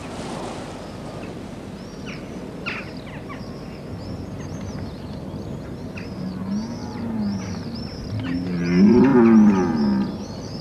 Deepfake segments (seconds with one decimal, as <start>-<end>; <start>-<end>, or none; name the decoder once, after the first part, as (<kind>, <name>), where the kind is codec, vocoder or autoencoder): none